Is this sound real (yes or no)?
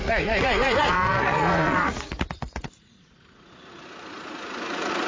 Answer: no